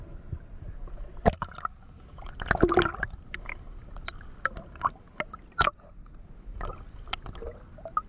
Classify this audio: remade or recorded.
recorded